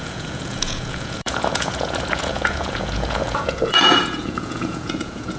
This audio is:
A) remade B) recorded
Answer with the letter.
A